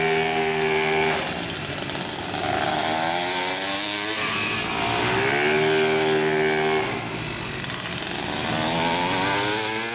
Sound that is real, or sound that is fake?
real